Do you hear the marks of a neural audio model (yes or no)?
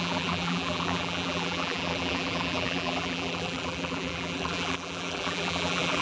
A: yes